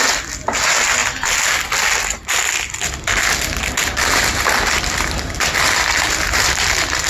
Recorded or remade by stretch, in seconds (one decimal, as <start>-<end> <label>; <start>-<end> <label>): 0.0-7.1 recorded